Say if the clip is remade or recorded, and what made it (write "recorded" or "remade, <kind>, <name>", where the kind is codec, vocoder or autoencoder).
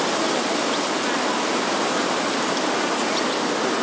recorded